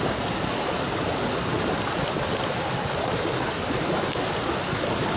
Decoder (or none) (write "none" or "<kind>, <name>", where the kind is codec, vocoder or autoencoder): none